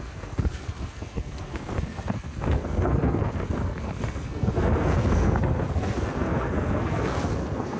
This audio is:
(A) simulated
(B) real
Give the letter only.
A